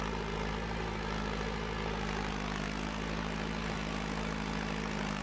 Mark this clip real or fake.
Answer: real